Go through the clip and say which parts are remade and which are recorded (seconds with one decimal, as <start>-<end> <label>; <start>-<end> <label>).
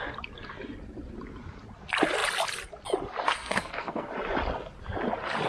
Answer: 0.0-3.3 recorded; 3.3-4.1 remade; 4.1-5.5 recorded